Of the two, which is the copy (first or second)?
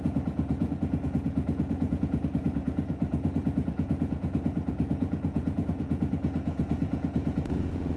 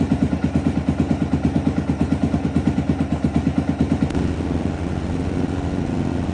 first